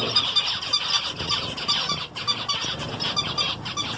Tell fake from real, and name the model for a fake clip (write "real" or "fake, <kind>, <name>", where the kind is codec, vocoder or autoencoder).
real